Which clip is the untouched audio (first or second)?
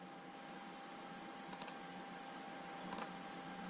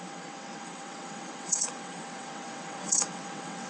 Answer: first